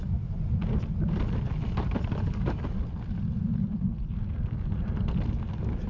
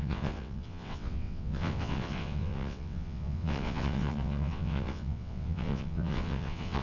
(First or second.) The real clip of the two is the first